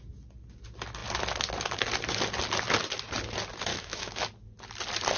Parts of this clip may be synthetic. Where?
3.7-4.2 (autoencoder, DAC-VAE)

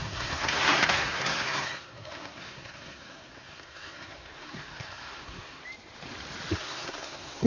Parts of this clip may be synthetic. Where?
0.0-5.6 (codec, SNAC); 6.5-7.5

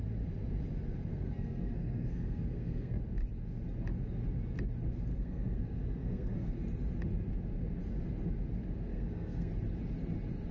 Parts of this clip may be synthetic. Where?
1.1-3.0 (codec, SNAC); 5.1-6.5; 8.9-9.5

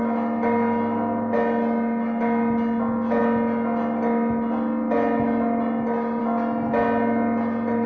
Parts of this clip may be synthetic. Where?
none

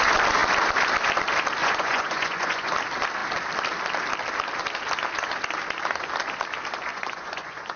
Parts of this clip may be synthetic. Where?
1.6-2.7 (vocoder, Vocos); 6.9-7.8

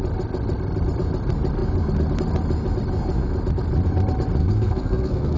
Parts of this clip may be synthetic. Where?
4.4-5.4 (codec, SNAC)

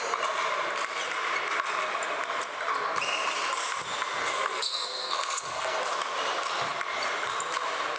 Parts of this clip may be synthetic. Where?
4.2-5.8 (codec, SNAC)

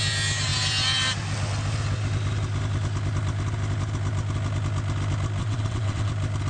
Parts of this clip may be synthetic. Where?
5.4-6.1 (vocoder, WaveNeXt)